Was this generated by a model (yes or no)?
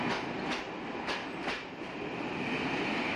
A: no